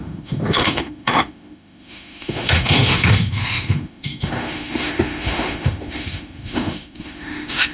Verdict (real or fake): fake